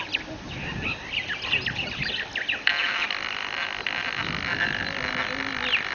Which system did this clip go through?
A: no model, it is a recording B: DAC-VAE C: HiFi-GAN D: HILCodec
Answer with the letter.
A